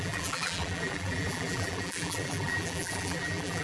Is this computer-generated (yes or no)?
yes